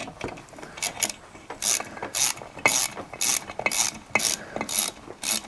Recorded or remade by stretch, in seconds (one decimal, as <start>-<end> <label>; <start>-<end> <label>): 0.0-5.5 recorded